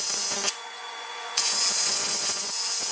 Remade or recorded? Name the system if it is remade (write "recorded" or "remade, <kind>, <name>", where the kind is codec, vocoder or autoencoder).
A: remade, vocoder, Vocos